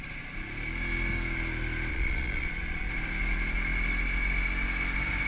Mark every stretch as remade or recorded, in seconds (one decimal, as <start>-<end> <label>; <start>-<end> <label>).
0.0-1.9 recorded; 1.9-2.9 remade; 2.9-5.3 recorded